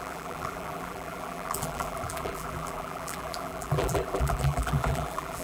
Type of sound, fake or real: fake